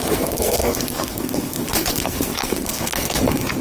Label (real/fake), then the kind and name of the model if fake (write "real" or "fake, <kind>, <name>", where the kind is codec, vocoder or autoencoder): fake, codec, SNAC